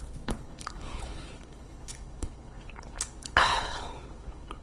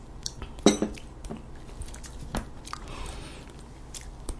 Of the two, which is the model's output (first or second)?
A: first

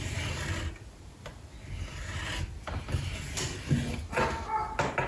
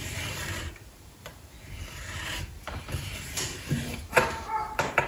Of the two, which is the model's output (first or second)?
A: second